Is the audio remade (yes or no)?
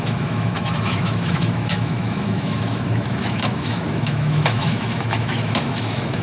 yes